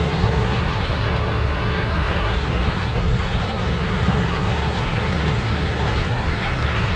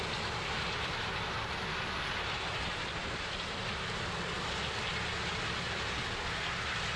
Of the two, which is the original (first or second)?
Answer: second